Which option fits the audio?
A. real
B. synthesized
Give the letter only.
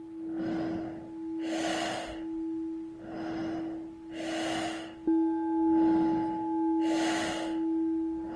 A